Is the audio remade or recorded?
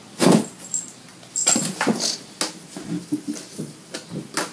recorded